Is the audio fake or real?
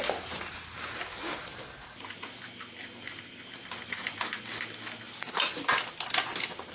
real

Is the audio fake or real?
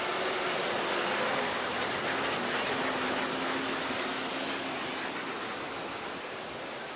real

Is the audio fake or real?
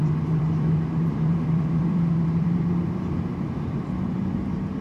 fake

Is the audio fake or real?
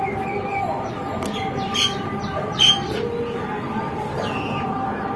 real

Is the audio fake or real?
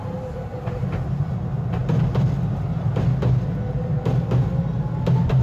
real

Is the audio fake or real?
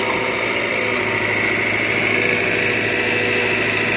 real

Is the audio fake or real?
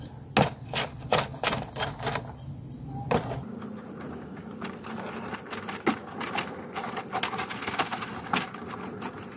real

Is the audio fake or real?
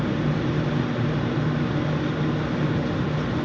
real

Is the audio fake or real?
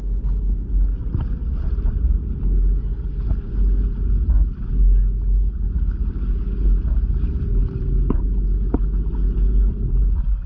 real